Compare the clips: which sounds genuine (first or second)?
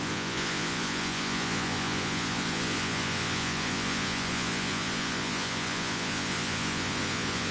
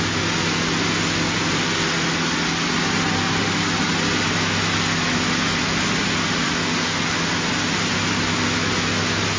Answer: second